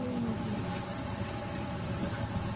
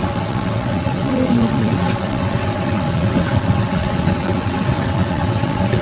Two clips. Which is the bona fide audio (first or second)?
first